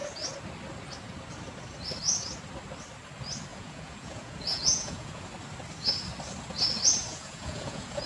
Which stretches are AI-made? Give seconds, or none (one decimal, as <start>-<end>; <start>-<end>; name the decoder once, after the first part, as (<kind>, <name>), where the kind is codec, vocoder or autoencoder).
3.5-5.2 (vocoder, Vocos); 7.1-8.1

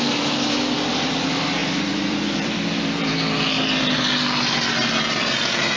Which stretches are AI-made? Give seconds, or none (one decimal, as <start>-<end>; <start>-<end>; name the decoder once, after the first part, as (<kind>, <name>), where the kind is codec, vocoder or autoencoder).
1.6-3.1 (vocoder, BigVGAN v2)

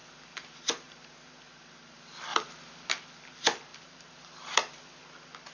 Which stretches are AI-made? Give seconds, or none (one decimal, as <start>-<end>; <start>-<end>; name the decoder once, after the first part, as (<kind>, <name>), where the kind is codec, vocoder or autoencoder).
0.0-0.5 (vocoder, BigVGAN v2); 2.3-2.9; 3.7-5.0

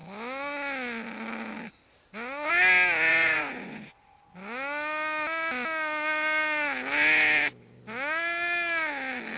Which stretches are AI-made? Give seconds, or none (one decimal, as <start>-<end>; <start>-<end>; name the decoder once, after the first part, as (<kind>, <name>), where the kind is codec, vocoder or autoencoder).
3.1-4.0 (vocoder, Vocos)

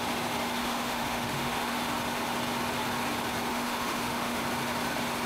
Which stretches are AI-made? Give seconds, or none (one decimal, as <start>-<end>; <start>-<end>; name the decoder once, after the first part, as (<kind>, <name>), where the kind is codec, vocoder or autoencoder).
0.6-1.8 (autoencoder, DAC-VAE); 3.5-4.4

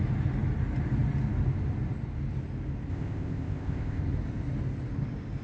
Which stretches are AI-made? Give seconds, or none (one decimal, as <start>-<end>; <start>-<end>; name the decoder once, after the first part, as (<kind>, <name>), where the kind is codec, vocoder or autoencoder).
2.9-4.0 (codec, ZipCodec)